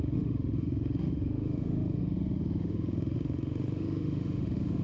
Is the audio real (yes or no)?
no